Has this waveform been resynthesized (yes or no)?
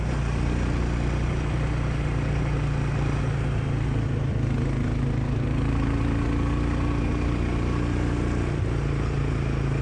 no